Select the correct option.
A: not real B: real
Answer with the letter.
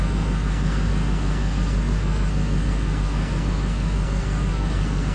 A